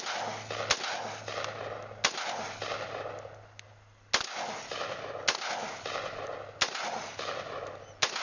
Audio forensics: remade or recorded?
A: recorded